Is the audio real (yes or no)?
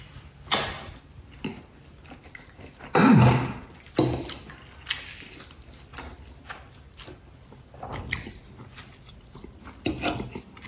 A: yes